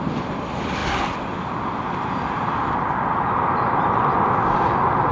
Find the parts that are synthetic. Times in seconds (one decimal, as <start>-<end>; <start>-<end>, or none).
none

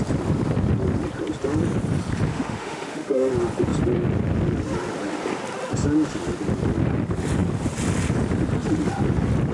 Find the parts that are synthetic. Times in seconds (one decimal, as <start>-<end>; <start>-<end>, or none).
2.3-3.3